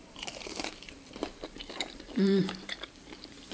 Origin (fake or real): fake